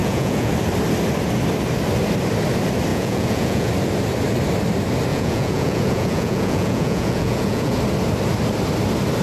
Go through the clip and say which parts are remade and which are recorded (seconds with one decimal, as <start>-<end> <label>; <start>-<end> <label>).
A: 0.0-0.5 remade; 0.5-2.9 recorded; 2.9-3.7 remade; 3.7-5.1 recorded; 5.1-7.8 remade; 7.8-9.2 recorded

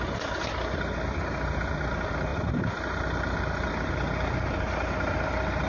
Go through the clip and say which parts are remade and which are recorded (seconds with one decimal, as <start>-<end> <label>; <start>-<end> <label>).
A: 0.0-5.7 recorded

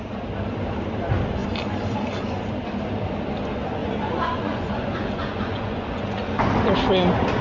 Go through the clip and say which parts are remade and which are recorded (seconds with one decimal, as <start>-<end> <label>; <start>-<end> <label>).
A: 0.0-3.8 recorded; 3.8-6.5 remade; 6.5-7.4 recorded

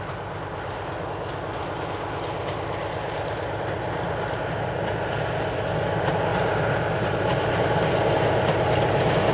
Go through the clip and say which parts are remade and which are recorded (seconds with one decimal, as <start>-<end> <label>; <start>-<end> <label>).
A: 0.0-9.3 recorded

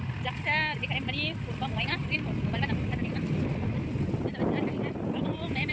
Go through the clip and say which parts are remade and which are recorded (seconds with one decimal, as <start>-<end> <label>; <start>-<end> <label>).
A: 0.0-5.7 recorded

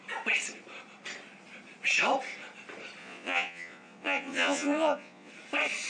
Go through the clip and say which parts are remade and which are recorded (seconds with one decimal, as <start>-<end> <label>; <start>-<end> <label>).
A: 0.0-3.0 recorded; 3.0-5.3 remade; 5.3-5.9 recorded